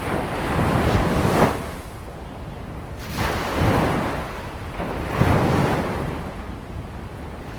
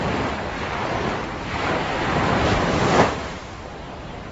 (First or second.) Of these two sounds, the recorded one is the first